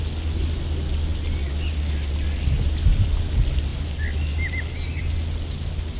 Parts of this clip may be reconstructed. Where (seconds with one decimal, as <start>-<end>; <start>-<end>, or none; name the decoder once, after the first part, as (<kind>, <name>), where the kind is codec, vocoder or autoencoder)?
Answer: none